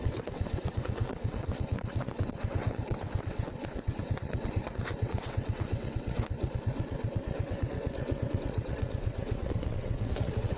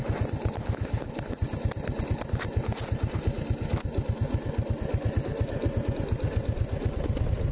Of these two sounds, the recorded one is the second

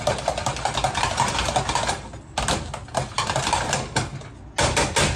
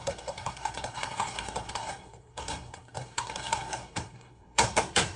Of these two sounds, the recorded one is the first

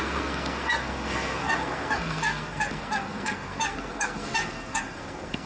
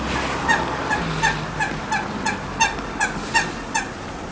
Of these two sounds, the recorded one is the second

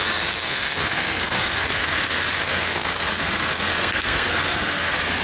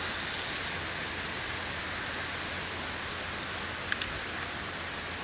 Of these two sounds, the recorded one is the second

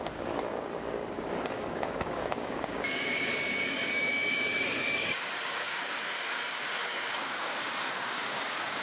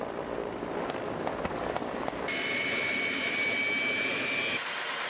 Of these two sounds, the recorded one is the second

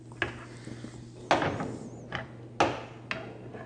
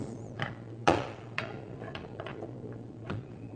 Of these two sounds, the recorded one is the first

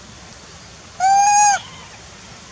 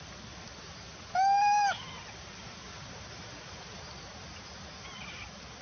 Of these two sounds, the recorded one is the first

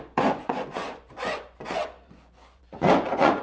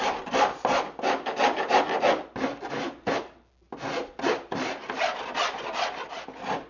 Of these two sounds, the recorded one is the second